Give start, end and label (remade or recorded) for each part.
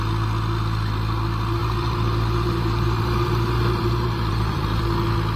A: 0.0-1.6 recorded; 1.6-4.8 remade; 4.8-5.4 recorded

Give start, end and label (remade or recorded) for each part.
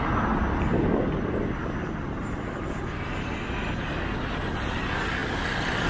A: 0.0-5.9 recorded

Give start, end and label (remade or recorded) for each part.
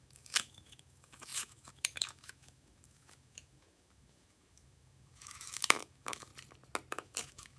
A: 0.0-6.3 remade; 6.3-6.9 recorded; 6.9-7.6 remade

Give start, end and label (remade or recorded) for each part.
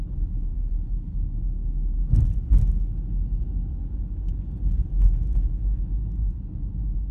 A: 0.0-7.1 recorded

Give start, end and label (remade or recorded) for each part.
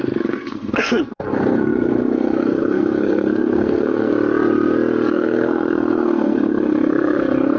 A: 0.0-4.1 remade; 4.1-5.1 recorded; 5.1-7.6 remade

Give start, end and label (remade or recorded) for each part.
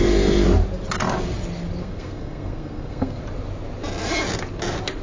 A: 0.0-1.8 recorded; 1.8-3.2 remade; 3.2-5.0 recorded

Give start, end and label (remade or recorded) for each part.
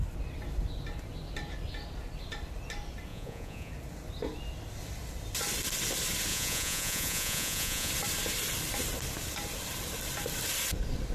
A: 0.0-3.1 recorded; 3.1-3.7 remade; 3.7-6.3 recorded; 6.3-7.9 remade; 7.9-11.1 recorded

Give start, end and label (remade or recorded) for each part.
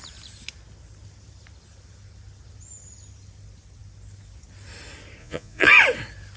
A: 0.0-5.2 recorded; 5.2-5.7 remade; 5.7-6.4 recorded